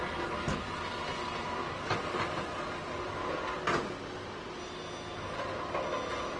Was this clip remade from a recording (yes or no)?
no